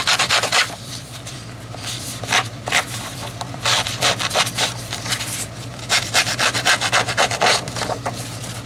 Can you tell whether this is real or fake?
fake